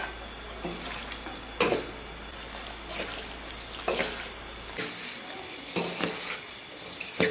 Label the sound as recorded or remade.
recorded